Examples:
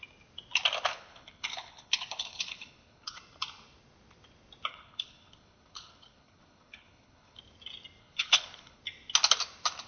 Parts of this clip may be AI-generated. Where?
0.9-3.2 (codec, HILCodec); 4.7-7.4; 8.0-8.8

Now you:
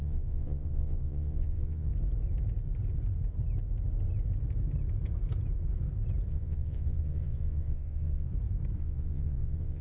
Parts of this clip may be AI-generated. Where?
0.0-1.9 (vocoder, Vocos); 6.3-8.3; 8.8-9.8

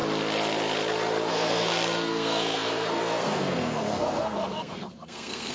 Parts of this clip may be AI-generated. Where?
1.3-5.5 (codec, SNAC)

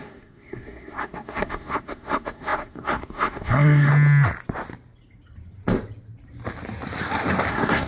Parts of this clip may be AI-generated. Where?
0.0-3.9 (codec, SNAC); 7.5-7.9

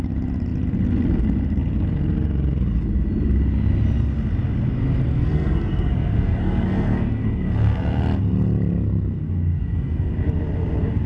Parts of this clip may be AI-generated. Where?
5.1-8.0 (codec, SNAC); 9.2-10.1

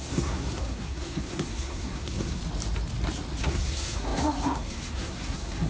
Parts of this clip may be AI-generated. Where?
0.0-2.4 (codec, SNAC); 3.4-5.7

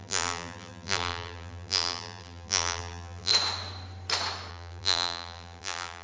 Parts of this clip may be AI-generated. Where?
0.0-3.3 (vocoder, BigVGAN v2); 4.5-6.0

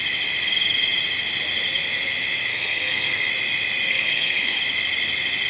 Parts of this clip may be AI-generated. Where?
2.5-3.3 (codec, SNAC); 3.9-4.6